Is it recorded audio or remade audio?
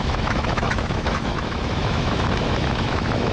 remade